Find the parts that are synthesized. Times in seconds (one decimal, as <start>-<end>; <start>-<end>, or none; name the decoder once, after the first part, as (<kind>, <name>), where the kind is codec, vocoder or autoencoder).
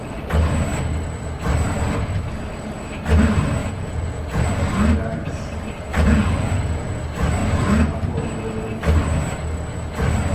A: 3.6-4.4 (vocoder, Vocos); 5.9-7.0